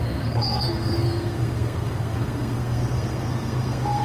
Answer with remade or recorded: remade